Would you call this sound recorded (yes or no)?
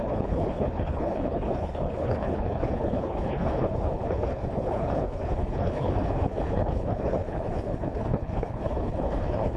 no